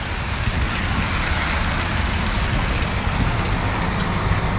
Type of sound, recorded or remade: recorded